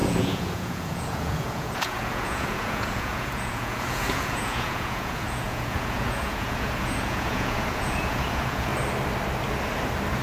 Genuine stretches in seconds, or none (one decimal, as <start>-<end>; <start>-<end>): 8.7-10.2